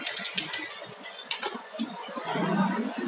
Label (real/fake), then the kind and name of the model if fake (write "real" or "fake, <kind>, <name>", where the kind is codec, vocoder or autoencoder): fake, vocoder, Vocos